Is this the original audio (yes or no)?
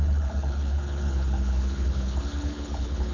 no